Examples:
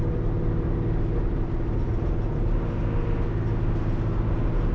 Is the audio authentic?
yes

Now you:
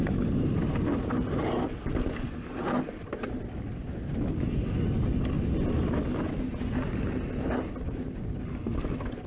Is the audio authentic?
yes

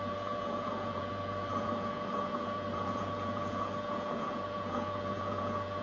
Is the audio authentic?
no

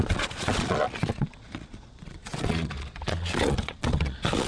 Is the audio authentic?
no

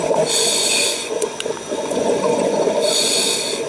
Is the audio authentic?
no